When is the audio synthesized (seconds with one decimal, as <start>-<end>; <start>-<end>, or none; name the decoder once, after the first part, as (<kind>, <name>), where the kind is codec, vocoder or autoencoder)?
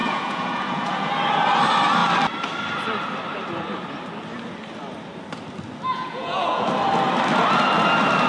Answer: 0.0-1.1 (vocoder, Vocos); 5.9-6.7